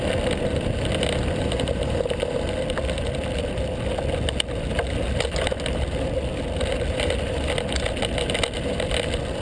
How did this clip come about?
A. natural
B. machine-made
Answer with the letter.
A